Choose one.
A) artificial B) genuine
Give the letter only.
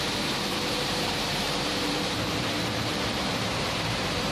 A